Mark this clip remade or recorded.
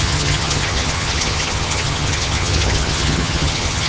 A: remade